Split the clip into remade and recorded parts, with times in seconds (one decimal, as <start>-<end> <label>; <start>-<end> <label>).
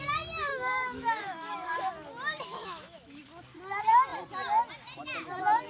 0.0-0.5 recorded; 0.5-1.9 remade; 1.9-2.6 recorded; 2.6-3.2 remade; 3.2-5.7 recorded